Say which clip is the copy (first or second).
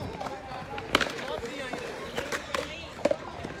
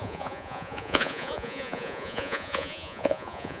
second